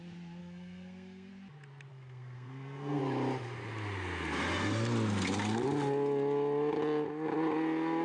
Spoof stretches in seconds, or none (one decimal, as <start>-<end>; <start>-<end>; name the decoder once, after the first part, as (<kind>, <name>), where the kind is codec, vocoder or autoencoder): 0.4-1.3 (codec, SNAC); 1.9-3.0